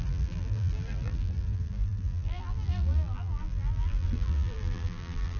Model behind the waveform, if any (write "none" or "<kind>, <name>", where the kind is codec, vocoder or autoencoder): vocoder, BigVGAN v2